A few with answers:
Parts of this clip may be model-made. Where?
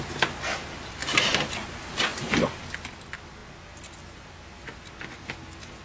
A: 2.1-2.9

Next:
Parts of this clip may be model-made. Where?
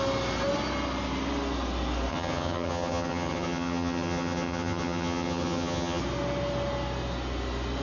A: 2.1-6.0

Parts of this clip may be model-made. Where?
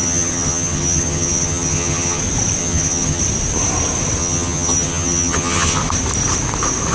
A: 0.0-2.2; 2.6-3.2; 4.2-5.8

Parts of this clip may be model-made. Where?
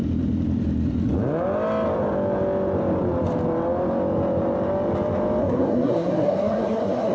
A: 5.4-7.1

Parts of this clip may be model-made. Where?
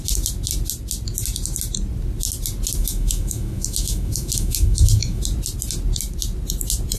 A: 2.8-5.2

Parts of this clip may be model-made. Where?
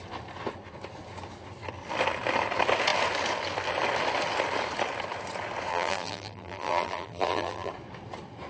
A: 5.7-7.7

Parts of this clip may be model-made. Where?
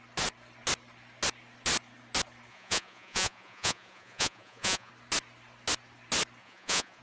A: 2.5-4.9; 6.4-7.0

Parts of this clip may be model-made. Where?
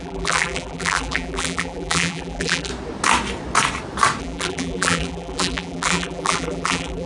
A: 0.0-2.7; 4.2-7.1